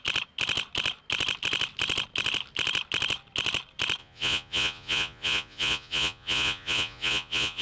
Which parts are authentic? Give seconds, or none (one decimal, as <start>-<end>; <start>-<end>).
0.0-4.0